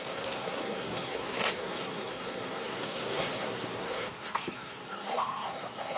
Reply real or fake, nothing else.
fake